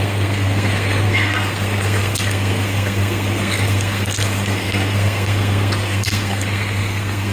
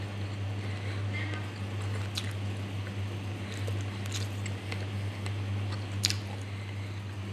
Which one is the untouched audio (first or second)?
second